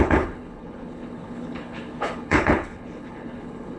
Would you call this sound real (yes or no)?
no